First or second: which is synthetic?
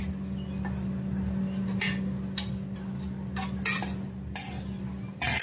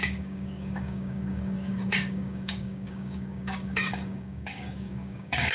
second